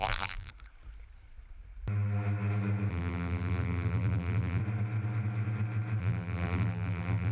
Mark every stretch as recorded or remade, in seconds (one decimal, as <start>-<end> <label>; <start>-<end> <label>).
0.0-0.5 remade; 0.5-2.9 recorded; 2.9-4.6 remade; 4.6-6.0 recorded; 6.0-7.3 remade